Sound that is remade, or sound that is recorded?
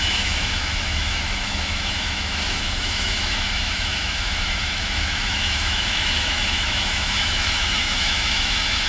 remade